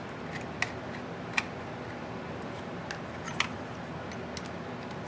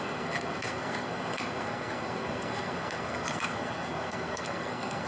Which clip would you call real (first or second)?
first